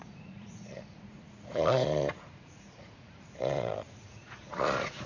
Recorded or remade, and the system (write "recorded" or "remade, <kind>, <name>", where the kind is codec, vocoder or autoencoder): remade, vocoder, Vocos